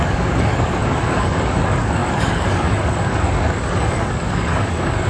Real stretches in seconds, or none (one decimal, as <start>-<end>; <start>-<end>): none